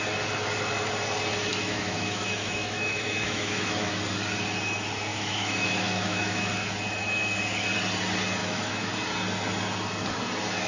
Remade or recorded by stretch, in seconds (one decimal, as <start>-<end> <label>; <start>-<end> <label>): 0.0-1.5 recorded; 1.5-3.9 remade; 3.9-5.1 recorded; 5.1-6.5 remade; 6.5-8.4 recorded; 8.4-8.9 remade; 8.9-10.7 recorded